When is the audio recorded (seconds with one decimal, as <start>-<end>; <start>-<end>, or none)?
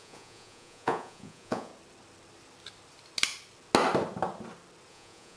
1.7-4.9